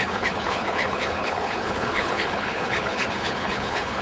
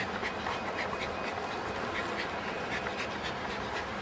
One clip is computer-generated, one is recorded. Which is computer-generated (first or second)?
first